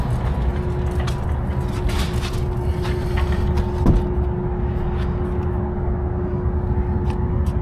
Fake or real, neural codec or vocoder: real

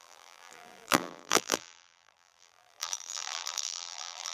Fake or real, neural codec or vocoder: fake, vocoder, BigVGAN v2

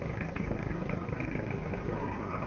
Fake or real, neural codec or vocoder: fake, codec, SNAC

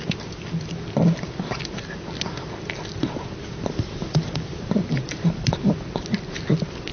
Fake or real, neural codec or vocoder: real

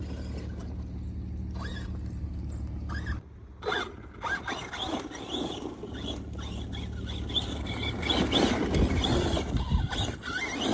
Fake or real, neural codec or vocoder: real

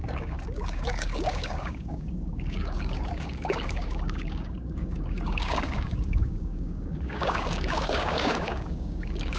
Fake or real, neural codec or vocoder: fake, codec, DAC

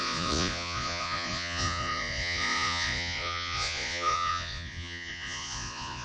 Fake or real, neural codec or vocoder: fake, vocoder, Vocos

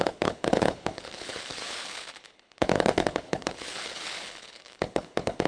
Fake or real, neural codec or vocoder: fake, codec, HILCodec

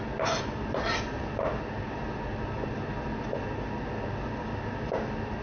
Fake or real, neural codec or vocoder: real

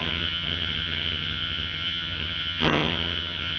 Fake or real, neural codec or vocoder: fake, vocoder, HiFi-GAN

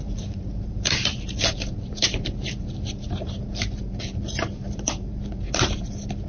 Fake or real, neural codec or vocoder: fake, vocoder, BigVGAN v2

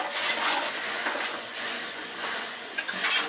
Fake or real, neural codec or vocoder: fake, vocoder, Vocos